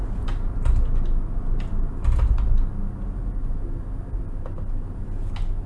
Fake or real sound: real